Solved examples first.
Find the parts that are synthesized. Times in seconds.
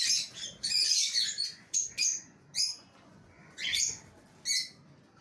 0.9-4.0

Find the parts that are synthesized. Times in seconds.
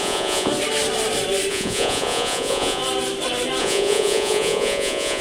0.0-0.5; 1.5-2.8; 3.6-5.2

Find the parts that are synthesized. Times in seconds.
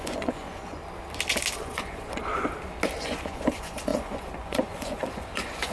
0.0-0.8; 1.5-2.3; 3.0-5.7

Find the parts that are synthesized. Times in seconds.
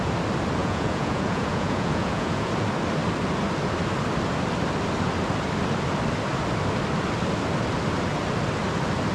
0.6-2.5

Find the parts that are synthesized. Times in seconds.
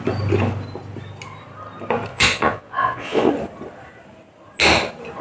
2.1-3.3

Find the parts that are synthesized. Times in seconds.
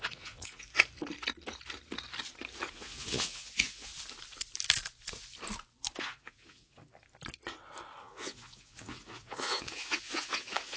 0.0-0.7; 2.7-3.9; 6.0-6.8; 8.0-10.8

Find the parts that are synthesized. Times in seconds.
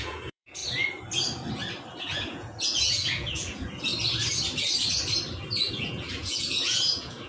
0.0-0.6; 2.0-3.9; 5.7-7.3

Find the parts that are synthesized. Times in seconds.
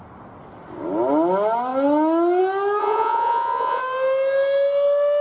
2.8-3.8